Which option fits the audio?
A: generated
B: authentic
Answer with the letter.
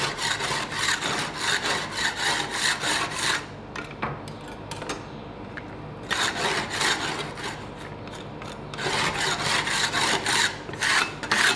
B